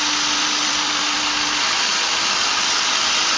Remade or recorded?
remade